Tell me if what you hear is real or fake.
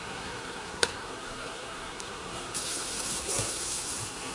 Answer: fake